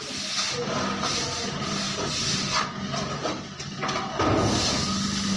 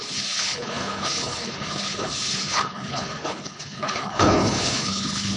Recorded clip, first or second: first